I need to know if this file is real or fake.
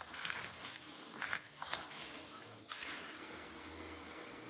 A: fake